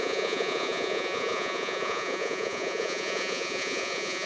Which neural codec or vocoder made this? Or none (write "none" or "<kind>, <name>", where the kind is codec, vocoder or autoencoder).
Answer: vocoder, Vocos